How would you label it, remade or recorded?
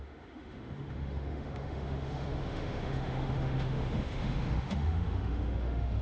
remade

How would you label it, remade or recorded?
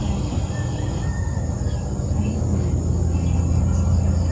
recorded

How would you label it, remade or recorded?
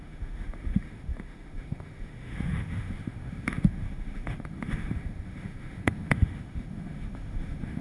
remade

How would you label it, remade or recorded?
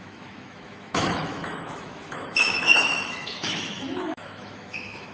remade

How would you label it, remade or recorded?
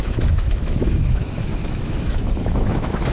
remade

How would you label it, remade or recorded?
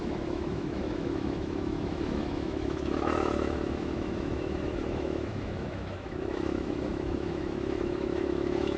remade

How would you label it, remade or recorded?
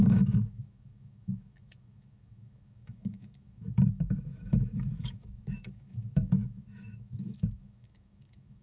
remade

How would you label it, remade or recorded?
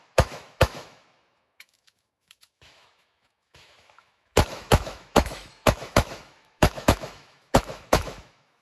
remade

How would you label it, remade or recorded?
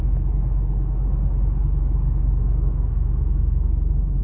remade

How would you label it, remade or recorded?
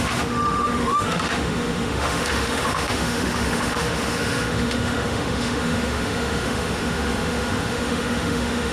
remade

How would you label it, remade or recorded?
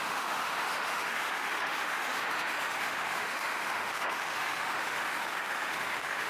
remade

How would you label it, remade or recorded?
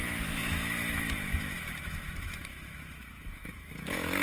remade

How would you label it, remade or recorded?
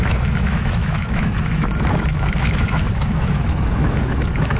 remade